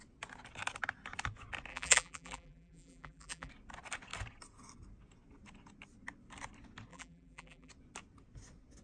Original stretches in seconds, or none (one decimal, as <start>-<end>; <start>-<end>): 0.0-1.7; 3.5-6.9; 7.7-8.8